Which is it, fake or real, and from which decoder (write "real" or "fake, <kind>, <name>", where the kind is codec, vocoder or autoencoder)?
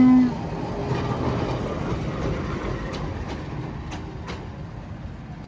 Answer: real